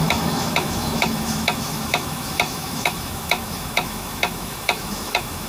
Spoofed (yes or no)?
yes